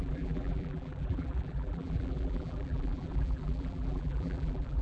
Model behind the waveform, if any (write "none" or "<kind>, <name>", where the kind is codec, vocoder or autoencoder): vocoder, BigVGAN v2